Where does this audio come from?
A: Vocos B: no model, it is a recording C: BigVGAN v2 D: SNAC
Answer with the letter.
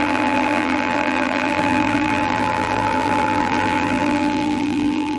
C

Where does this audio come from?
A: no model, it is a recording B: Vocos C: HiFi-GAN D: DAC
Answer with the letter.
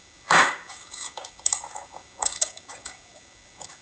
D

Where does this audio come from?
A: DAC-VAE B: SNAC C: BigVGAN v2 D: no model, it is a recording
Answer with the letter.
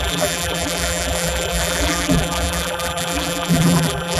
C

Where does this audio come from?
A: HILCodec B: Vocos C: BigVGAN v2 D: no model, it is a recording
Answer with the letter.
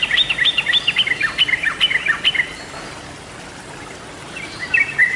D